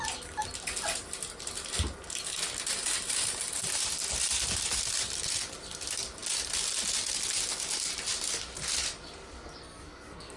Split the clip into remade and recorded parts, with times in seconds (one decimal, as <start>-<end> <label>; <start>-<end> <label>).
0.0-9.6 recorded; 9.6-10.4 remade